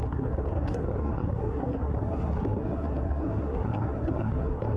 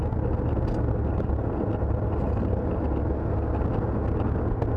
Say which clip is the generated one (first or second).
first